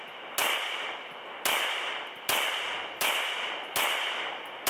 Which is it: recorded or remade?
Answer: recorded